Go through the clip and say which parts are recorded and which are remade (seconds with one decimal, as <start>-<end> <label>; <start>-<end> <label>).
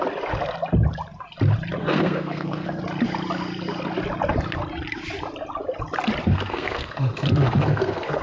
0.0-1.8 recorded; 1.8-2.8 remade; 2.8-6.3 recorded; 6.3-8.2 remade